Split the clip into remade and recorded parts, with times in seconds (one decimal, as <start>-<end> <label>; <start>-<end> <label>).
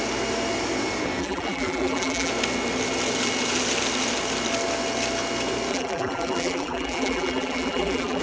0.0-1.2 recorded; 1.2-2.3 remade; 2.3-5.7 recorded; 5.7-8.2 remade